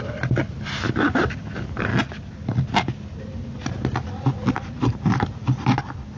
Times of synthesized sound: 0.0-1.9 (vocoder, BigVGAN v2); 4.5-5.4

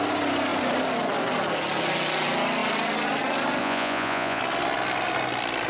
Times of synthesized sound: 3.6-4.4 (vocoder, Vocos)

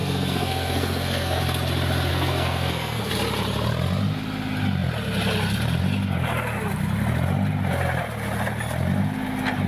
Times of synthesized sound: 0.0-1.4 (codec, SNAC); 2.1-3.1

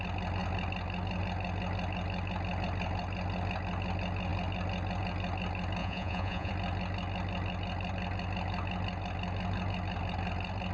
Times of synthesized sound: 5.8-6.5 (vocoder, Vocos)

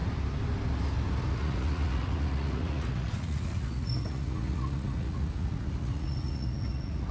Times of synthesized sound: 1.3-7.1 (vocoder, Vocos)

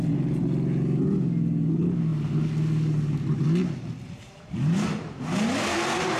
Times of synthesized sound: none

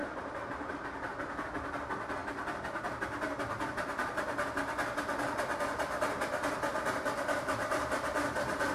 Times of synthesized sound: 0.0-0.7 (vocoder, BigVGAN v2); 6.7-8.7